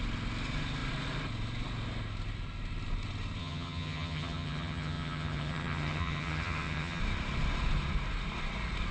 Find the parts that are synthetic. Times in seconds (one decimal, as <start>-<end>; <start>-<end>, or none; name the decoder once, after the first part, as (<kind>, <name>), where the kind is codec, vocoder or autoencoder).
3.4-7.0 (vocoder, HiFi-GAN)